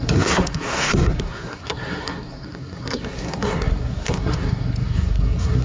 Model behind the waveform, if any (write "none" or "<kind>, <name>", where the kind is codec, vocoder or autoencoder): codec, SNAC